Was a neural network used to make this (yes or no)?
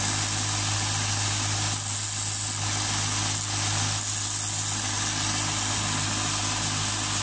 no